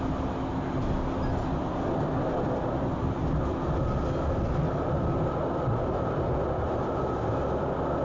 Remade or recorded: recorded